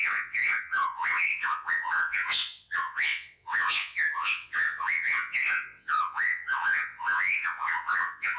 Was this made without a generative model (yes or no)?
no